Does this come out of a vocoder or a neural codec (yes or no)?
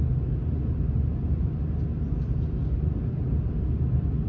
no